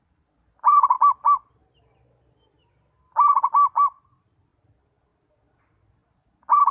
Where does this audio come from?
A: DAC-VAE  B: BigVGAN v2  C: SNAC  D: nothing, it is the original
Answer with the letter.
D